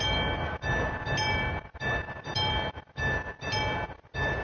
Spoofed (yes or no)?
no